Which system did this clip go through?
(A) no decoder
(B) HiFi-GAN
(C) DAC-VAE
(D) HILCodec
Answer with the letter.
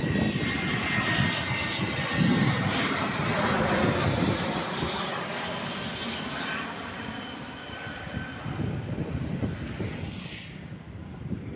A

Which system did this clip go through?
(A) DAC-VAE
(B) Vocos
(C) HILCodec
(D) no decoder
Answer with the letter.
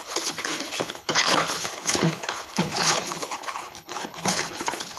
C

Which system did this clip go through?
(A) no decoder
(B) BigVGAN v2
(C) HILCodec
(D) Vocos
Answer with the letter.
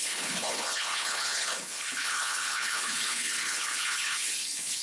C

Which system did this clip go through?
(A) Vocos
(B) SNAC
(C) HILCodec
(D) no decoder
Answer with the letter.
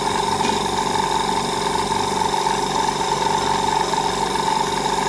D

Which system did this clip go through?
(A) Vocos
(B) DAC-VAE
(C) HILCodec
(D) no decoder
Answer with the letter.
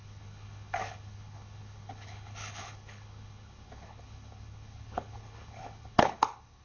C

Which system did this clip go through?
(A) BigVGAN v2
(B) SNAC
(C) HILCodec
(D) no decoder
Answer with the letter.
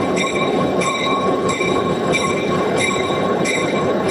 C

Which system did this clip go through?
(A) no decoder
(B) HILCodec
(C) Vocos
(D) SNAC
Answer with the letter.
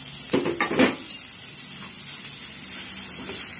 A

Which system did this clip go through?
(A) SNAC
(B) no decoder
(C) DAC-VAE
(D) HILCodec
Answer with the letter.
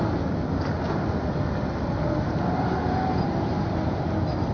B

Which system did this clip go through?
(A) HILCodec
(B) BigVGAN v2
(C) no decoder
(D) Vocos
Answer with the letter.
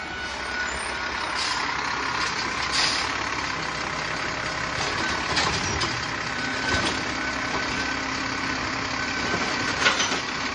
C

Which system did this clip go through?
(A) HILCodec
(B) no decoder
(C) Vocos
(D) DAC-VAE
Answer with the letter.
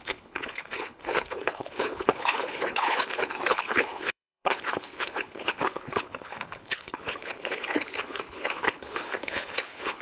A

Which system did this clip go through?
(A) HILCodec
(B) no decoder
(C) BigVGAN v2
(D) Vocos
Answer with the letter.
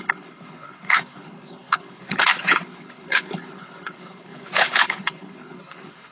A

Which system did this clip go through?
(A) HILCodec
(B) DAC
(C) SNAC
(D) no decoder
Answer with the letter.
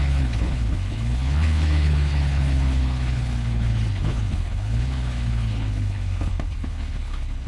A